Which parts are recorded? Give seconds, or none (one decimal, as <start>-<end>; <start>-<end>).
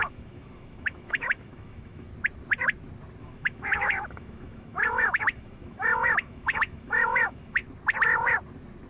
2.1-3.2; 7.6-8.9